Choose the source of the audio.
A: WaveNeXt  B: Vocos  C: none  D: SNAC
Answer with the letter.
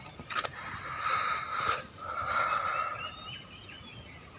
C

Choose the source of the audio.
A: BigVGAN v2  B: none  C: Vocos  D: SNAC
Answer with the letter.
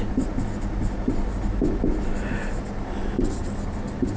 B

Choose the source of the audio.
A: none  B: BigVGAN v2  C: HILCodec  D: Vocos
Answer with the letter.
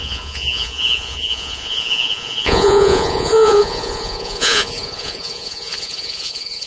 D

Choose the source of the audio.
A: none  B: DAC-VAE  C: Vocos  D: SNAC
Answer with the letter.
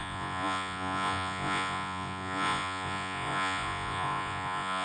C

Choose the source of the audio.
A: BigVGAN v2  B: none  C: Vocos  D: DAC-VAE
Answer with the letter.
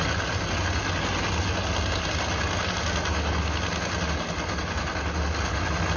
B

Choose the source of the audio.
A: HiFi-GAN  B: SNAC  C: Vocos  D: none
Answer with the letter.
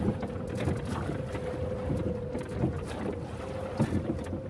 D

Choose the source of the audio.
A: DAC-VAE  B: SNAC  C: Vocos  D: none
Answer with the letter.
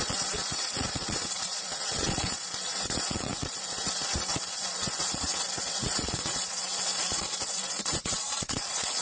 C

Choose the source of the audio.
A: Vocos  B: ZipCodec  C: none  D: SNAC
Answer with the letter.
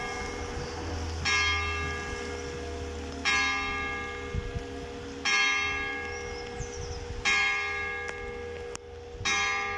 C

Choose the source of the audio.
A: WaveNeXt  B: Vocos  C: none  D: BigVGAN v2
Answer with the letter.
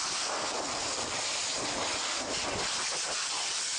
C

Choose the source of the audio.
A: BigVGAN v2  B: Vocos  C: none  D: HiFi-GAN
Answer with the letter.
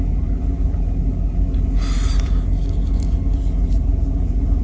C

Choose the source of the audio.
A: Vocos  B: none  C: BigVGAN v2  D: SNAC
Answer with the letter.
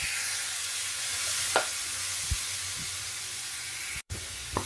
A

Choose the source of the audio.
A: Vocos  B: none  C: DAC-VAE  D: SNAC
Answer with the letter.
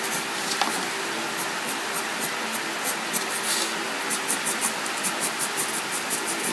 B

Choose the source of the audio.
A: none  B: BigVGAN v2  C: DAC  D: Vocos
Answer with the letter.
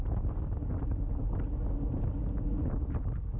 A